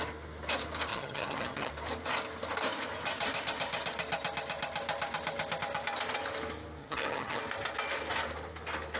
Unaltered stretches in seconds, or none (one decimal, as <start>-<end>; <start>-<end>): 0.0-0.9; 1.7-6.8; 7.4-9.0